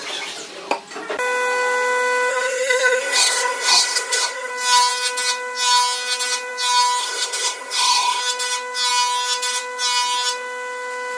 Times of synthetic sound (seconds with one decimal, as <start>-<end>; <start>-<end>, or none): 2.3-4.5; 7.0-8.2